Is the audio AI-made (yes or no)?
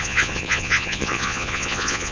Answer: yes